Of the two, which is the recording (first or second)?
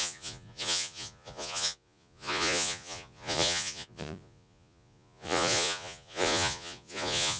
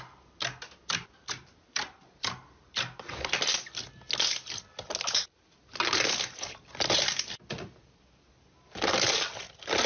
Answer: second